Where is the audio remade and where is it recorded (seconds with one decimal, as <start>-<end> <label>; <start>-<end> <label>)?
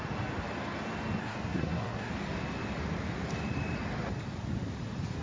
0.0-1.2 recorded; 1.2-2.1 remade; 2.1-5.2 recorded